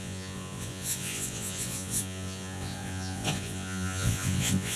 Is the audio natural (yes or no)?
no